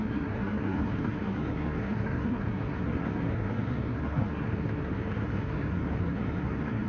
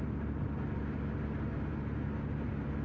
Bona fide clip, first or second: second